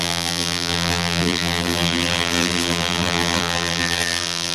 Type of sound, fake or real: fake